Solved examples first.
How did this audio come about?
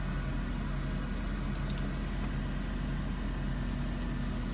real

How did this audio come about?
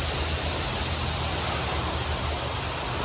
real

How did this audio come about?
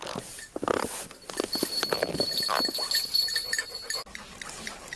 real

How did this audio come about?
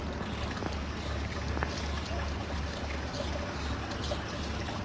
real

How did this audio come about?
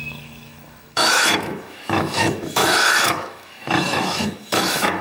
fake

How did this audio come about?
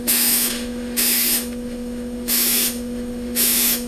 fake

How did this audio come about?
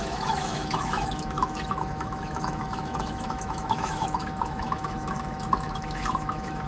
fake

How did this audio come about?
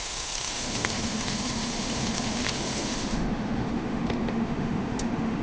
fake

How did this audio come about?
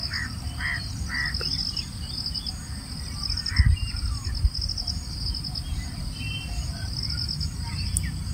real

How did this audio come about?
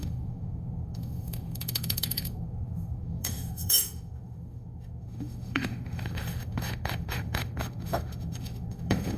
fake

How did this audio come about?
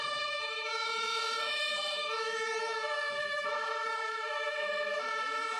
fake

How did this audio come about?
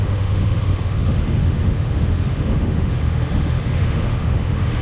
fake